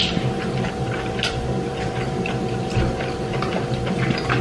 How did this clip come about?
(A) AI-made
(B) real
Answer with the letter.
A